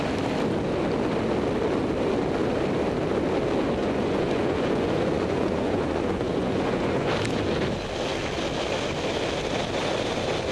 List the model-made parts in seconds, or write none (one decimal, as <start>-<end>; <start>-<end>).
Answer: 3.8-7.1